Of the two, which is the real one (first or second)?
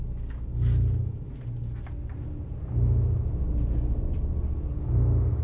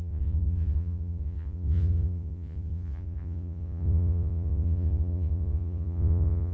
first